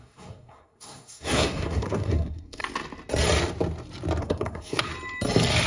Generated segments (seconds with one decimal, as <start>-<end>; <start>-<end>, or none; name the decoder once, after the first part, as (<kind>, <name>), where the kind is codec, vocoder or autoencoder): 0.0-2.6 (codec, SNAC); 4.2-4.9